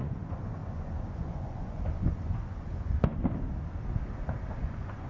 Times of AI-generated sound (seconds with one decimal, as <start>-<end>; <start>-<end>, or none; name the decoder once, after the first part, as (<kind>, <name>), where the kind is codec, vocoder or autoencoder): 0.0-3.2 (vocoder, Vocos); 4.6-5.1